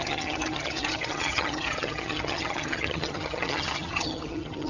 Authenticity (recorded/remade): remade